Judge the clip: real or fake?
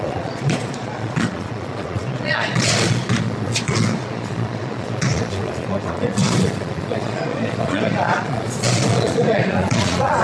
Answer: fake